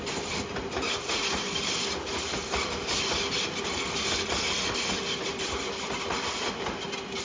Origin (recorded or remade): recorded